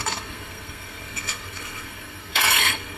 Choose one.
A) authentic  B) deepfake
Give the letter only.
B